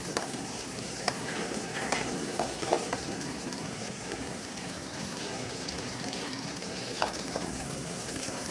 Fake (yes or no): yes